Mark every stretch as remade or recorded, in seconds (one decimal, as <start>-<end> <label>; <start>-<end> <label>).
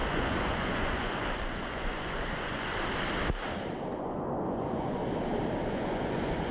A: 0.0-2.7 remade; 2.7-4.0 recorded; 4.0-5.0 remade; 5.0-5.7 recorded; 5.7-6.5 remade